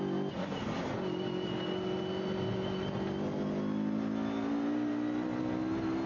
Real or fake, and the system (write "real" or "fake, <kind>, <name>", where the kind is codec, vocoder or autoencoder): real